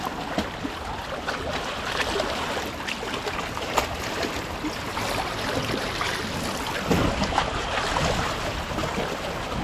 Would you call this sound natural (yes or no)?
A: yes